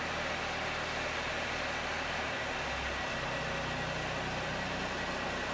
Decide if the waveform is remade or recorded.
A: recorded